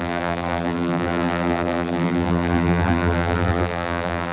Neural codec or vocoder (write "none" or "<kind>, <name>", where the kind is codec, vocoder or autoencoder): vocoder, BigVGAN v2